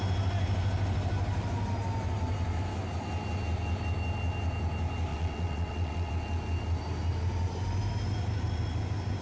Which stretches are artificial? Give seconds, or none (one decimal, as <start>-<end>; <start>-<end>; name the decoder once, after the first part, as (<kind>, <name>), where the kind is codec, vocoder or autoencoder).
5.1-6.1 (vocoder, WaveNeXt)